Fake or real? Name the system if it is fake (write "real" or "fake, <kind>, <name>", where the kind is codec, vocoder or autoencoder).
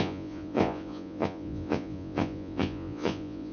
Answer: fake, vocoder, Vocos